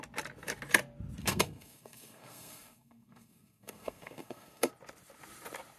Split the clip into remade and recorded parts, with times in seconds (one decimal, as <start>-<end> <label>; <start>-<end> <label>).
0.0-1.2 recorded; 1.2-4.7 remade; 4.7-5.8 recorded